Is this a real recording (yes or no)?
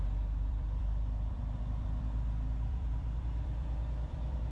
no